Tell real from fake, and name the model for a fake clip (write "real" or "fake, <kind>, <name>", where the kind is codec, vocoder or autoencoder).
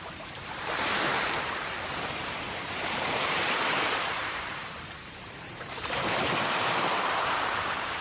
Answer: fake, vocoder, BigVGAN v2